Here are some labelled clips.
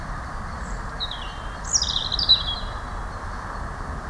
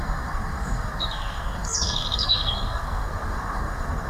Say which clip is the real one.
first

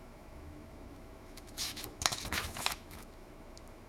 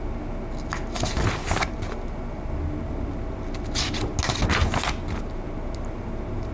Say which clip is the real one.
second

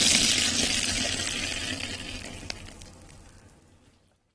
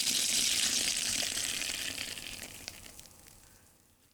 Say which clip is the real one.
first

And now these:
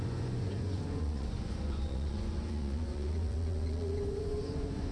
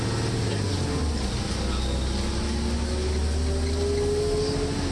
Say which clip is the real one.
second